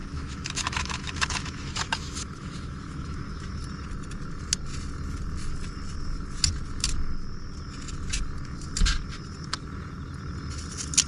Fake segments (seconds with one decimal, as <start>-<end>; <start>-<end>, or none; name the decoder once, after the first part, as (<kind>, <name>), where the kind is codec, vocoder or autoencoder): 0.0-3.6 (autoencoder, DAC-VAE)